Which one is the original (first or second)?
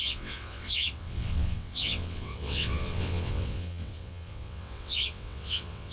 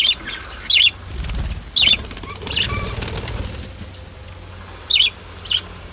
second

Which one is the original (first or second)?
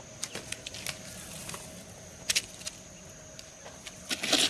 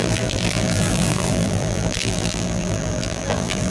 first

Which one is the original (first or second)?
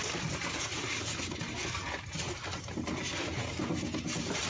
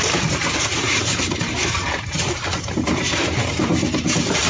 first